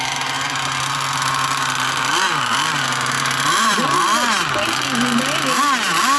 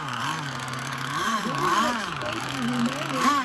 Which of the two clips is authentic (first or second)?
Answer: first